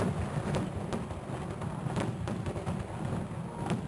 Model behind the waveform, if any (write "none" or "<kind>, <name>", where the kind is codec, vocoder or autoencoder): none